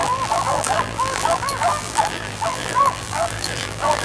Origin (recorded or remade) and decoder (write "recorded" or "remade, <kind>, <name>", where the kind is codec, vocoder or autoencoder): remade, vocoder, BigVGAN v2